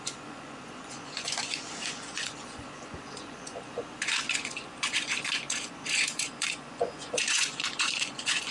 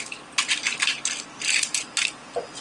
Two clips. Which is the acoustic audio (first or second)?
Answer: second